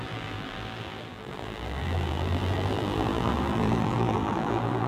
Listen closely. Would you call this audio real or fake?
fake